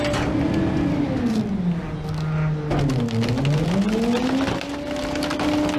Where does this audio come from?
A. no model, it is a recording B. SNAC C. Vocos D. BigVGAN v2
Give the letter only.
A